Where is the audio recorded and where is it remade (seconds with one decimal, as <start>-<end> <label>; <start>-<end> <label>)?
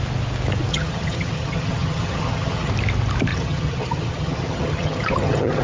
0.0-0.7 recorded; 0.7-2.7 remade; 2.7-3.3 recorded; 3.3-5.6 remade